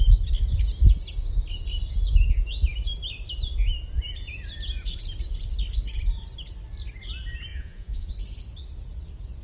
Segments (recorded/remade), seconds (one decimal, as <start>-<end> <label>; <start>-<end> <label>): 0.0-7.5 recorded; 7.5-8.1 remade; 8.1-9.4 recorded